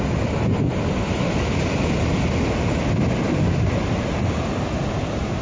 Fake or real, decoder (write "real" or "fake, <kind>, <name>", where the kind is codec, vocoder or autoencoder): real